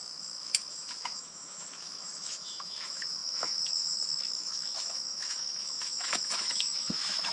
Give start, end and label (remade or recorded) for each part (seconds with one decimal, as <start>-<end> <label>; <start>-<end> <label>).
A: 0.0-7.3 remade